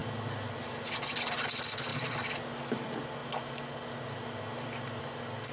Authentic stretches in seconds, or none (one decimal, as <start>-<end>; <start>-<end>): 0.0-5.5